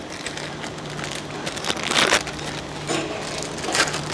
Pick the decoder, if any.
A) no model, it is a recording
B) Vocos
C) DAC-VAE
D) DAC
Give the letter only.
A